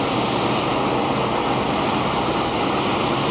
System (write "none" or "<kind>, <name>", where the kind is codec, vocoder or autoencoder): none